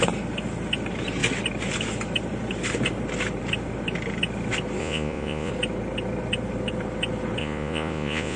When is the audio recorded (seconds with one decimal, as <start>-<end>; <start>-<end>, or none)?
0.0-4.8; 5.5-7.4